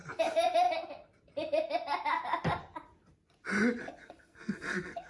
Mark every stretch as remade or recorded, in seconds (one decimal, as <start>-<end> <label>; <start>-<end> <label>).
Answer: 0.0-4.0 recorded; 4.0-5.1 remade